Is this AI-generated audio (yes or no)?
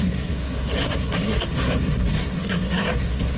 yes